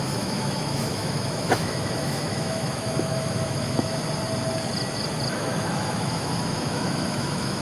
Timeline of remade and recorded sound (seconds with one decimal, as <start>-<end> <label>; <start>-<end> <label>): 0.0-4.0 remade; 4.0-5.3 recorded; 5.3-7.6 remade